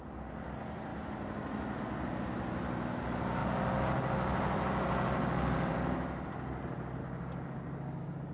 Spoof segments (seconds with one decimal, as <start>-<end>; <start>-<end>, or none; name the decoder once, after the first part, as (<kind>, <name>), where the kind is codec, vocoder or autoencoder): none